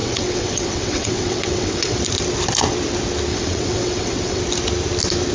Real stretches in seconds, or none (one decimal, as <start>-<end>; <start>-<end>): 2.0-3.3; 4.4-5.3